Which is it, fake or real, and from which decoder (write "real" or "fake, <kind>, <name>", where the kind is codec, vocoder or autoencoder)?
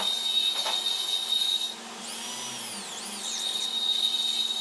real